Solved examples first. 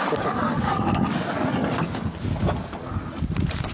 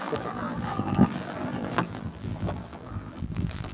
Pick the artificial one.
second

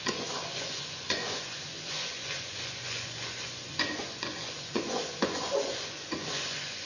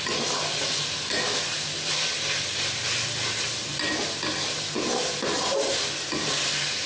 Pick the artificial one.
first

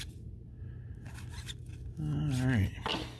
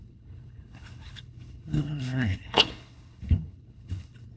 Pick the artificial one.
second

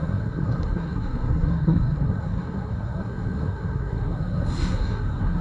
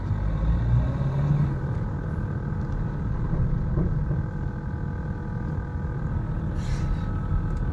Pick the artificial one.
first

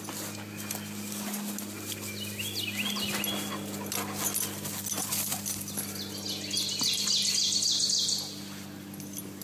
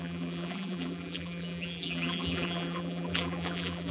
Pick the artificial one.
second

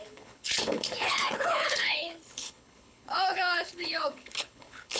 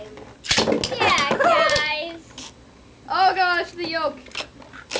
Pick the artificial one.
first